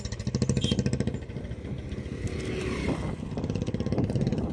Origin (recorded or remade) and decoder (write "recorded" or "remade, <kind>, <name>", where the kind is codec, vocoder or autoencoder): recorded